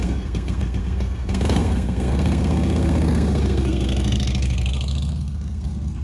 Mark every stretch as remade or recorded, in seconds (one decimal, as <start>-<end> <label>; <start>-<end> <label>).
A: 0.0-6.0 remade